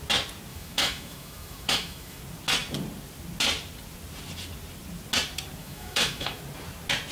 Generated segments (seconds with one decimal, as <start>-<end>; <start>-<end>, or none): 0.5-2.2; 5.6-6.4